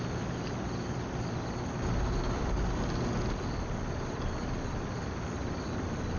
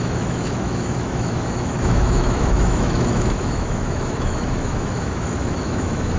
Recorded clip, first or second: first